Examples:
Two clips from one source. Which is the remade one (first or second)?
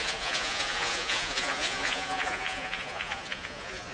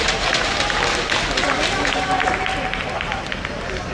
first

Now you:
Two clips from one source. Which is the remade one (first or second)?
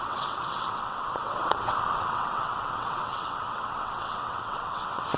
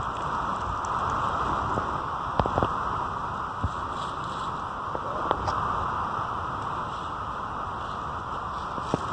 first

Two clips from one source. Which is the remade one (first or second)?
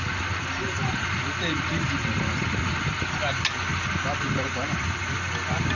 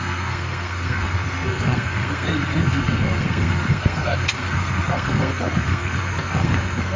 second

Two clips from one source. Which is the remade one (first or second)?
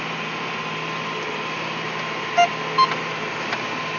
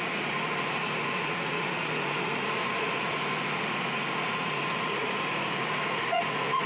second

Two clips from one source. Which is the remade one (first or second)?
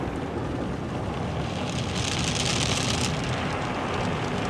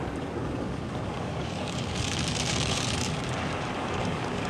second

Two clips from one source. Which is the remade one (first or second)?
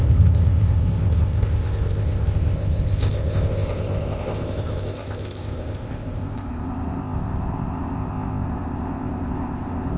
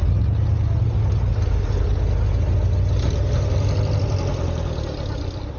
first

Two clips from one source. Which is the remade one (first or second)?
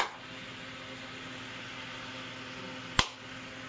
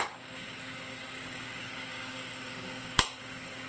second